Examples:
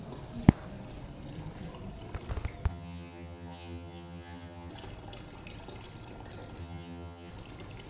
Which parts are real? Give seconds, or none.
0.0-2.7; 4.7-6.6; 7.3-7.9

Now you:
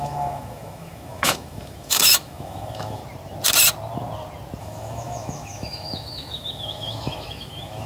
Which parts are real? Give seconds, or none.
3.0-4.6